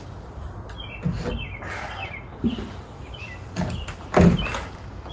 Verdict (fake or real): real